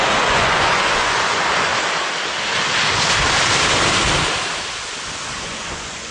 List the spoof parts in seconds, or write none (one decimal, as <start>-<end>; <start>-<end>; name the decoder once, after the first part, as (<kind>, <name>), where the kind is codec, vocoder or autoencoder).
0.0-1.7 (vocoder, Vocos); 5.4-6.1